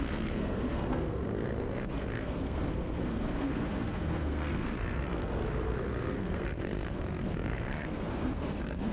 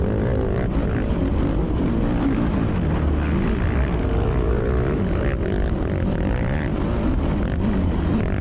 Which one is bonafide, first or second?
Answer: second